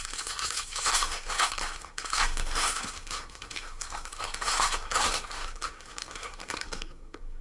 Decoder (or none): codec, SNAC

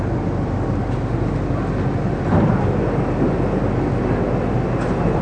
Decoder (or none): none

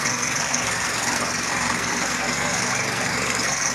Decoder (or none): codec, SNAC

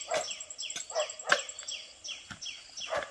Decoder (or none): none